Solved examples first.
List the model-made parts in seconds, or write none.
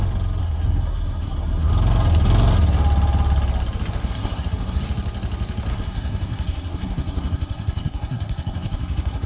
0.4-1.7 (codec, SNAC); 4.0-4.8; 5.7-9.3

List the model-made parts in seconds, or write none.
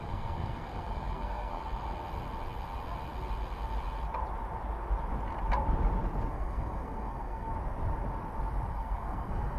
0.0-1.6 (codec, SNAC); 6.3-7.5; 8.7-9.6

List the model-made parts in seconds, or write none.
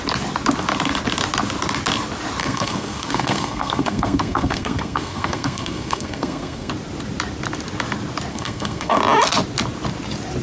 2.4-6.7 (codec, SNAC); 8.3-9.0